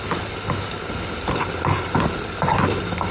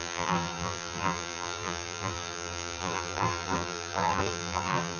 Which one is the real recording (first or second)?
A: first